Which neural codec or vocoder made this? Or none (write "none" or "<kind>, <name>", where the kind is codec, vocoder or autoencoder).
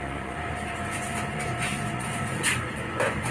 vocoder, Vocos